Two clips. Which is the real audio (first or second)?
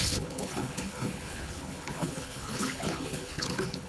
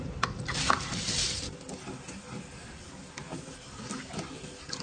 second